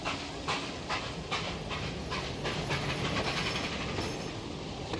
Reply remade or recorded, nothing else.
recorded